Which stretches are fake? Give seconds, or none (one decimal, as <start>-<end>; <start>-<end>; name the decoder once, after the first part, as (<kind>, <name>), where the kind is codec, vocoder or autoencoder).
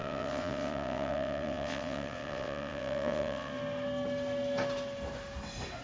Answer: 0.0-3.5 (vocoder, WaveNeXt)